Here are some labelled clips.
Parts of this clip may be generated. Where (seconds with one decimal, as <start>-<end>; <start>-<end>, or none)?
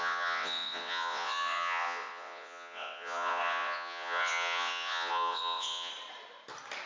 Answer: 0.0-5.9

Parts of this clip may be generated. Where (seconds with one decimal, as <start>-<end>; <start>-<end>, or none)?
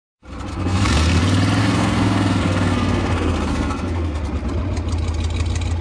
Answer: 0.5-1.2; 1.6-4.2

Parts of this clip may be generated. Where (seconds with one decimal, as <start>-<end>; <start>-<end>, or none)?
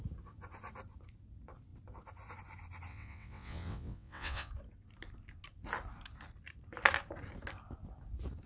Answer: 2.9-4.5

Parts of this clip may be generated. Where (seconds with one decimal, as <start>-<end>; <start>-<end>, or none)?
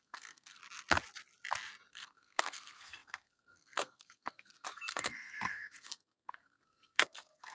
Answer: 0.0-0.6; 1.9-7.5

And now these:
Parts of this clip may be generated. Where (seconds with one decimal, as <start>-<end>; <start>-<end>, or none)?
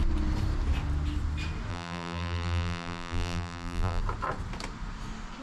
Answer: 1.7-4.0